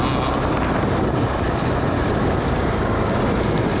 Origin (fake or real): real